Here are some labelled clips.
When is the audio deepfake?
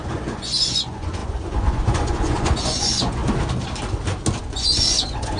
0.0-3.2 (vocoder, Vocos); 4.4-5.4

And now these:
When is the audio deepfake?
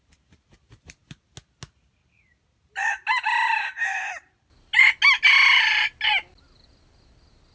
none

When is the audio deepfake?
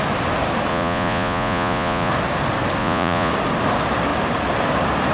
0.7-2.1 (vocoder, Vocos); 2.8-3.3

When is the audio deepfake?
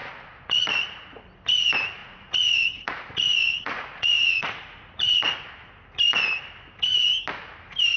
0.0-1.2 (vocoder, Vocos); 2.0-5.3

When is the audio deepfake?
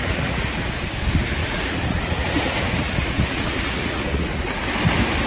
0.0-0.8 (vocoder, Vocos); 1.4-4.6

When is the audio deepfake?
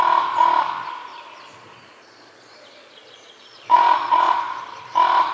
1.1-4.3 (vocoder, Vocos)